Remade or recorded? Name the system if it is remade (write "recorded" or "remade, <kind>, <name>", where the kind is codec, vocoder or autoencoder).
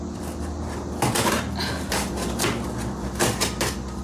recorded